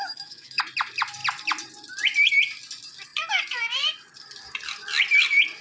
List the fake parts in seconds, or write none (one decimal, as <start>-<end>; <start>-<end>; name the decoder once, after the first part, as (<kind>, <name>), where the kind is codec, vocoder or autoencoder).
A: 0.0-0.6 (autoencoder, DAC-VAE)